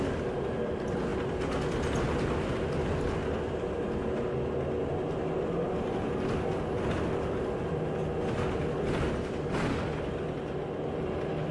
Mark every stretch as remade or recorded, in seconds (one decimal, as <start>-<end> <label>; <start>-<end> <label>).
0.0-11.5 recorded